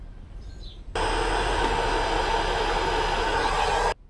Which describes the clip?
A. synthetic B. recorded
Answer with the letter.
B